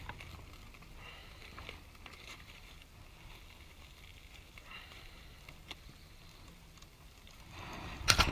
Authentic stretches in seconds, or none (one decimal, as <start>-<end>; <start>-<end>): 0.0-1.2; 2.4-4.1